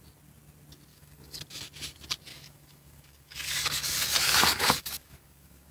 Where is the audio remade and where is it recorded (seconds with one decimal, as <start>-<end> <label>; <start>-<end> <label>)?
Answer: 0.0-0.9 recorded; 0.9-1.4 remade; 1.4-2.3 recorded; 2.3-5.7 remade